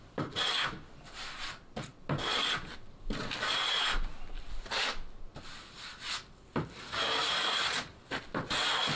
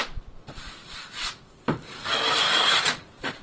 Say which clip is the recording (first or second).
first